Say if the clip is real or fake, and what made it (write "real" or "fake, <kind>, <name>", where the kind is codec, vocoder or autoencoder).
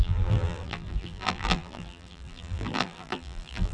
fake, vocoder, BigVGAN v2